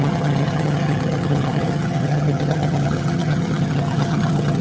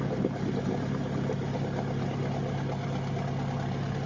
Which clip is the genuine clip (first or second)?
second